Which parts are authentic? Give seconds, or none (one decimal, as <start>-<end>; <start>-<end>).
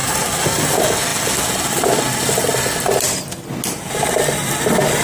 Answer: 0.0-5.0